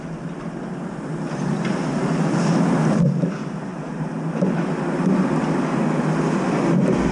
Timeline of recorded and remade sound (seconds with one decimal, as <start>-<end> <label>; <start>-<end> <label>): 0.0-3.7 recorded; 3.7-4.3 remade; 4.3-7.1 recorded